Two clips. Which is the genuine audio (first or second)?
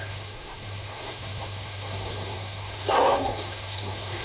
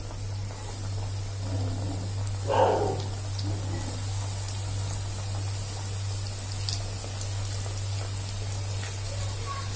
second